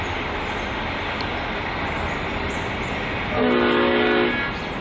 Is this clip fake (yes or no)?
no